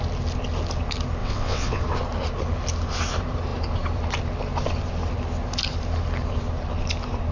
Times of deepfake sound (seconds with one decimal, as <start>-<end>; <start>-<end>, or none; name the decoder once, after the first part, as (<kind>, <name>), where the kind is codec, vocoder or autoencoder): 1.2-1.8 (vocoder, WaveNeXt)